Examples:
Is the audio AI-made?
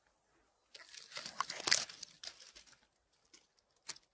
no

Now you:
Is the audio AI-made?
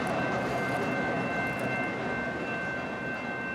no